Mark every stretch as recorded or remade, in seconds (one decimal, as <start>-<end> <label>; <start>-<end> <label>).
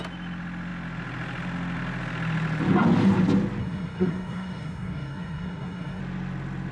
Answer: 0.0-3.6 recorded; 3.6-6.0 remade; 6.0-6.7 recorded